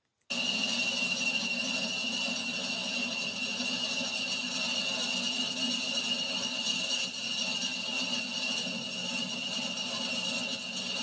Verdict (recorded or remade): recorded